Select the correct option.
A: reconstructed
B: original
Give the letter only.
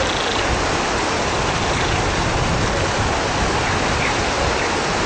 B